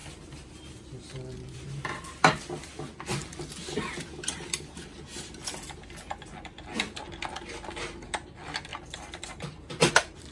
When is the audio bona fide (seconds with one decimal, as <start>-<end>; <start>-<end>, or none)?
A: 2.4-8.7; 9.9-10.3